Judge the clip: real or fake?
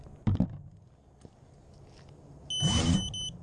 real